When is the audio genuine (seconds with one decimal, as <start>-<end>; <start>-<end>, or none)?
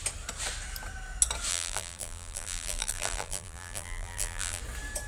0.0-1.5; 4.6-5.1